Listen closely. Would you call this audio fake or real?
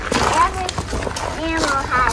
real